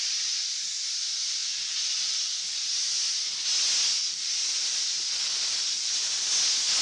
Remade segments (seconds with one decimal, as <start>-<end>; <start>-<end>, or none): 1.4-2.4; 4.0-6.3